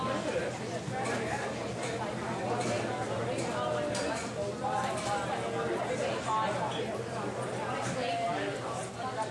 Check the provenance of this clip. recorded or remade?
recorded